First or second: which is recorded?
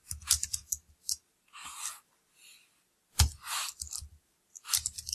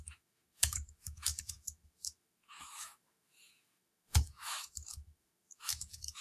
first